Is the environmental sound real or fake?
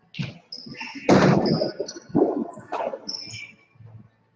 real